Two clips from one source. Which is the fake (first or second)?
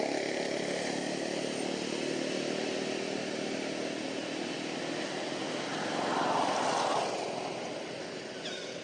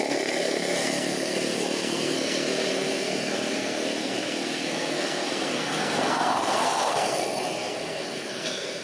second